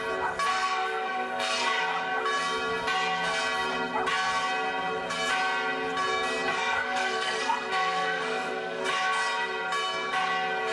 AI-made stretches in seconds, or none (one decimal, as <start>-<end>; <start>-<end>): 0.5-1.8; 6.5-8.8